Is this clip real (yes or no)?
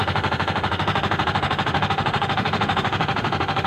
no